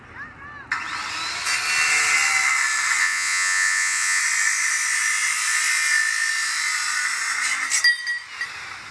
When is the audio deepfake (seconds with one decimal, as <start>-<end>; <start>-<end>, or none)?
3.0-4.2